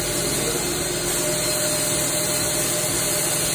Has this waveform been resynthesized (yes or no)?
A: no